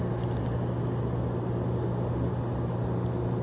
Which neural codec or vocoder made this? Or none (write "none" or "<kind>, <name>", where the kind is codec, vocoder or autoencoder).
none